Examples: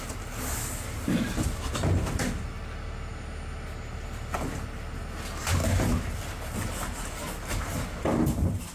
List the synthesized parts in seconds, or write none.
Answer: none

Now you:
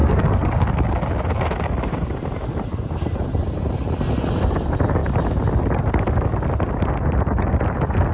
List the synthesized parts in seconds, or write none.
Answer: 0.0-0.7 (codec, DAC)

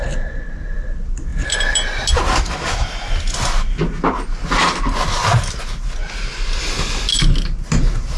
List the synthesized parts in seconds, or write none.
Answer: 1.3-2.1 (vocoder, BigVGAN v2)

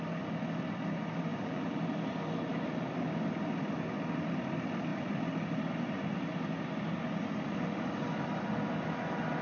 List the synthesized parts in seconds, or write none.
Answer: 1.3-1.8 (vocoder, BigVGAN v2)